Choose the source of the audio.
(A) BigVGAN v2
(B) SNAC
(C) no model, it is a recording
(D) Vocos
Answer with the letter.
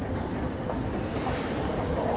A